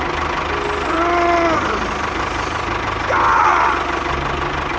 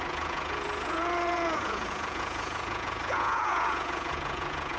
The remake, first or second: second